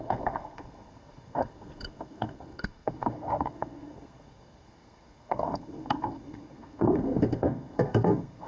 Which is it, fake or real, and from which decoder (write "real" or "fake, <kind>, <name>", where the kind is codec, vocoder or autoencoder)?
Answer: fake, codec, SNAC